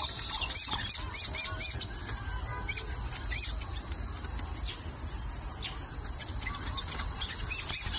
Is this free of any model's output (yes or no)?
yes